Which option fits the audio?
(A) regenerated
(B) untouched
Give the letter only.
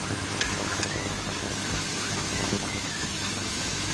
A